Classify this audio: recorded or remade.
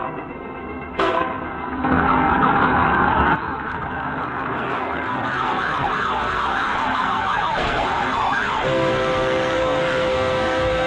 remade